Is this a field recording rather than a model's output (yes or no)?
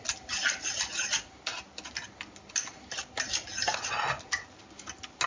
yes